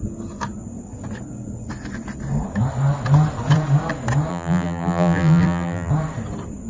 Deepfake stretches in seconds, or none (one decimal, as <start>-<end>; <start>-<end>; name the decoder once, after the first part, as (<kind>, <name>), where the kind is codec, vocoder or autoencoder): 4.3-5.9 (vocoder, BigVGAN v2)